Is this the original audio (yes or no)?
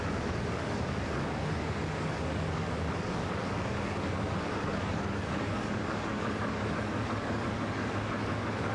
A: no